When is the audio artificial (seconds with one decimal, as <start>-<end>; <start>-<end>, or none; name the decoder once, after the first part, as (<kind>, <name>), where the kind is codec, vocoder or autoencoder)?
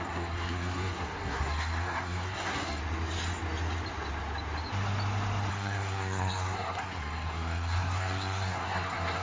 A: 0.0-2.8 (codec, SNAC); 5.5-9.2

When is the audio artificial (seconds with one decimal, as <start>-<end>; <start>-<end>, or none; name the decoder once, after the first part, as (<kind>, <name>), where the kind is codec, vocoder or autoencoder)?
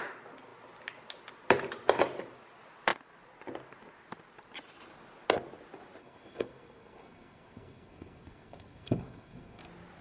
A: 6.0-9.6 (codec, SNAC)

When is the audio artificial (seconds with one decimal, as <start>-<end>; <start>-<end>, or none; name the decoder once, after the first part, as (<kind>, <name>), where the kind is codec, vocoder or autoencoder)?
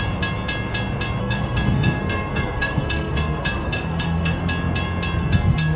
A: 1.2-4.4 (codec, SNAC); 5.2-5.8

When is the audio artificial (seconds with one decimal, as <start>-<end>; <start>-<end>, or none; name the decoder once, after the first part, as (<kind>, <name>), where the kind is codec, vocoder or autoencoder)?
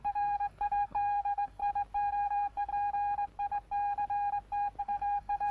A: 0.0-1.6 (codec, SNAC); 2.1-2.7; 4.8-5.5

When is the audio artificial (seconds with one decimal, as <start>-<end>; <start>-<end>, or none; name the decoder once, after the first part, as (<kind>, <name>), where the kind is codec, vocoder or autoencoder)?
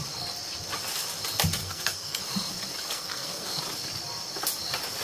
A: 1.6-2.2 (codec, SNAC); 2.9-3.6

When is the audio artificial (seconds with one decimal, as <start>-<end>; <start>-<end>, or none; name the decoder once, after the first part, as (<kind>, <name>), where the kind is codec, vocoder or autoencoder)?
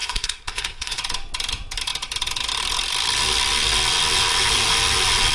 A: 0.0-1.0 (codec, SNAC)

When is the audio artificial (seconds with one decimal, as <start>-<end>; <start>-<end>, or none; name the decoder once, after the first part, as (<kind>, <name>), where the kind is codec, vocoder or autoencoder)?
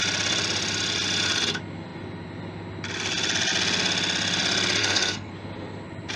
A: 4.8-5.3 (codec, SNAC)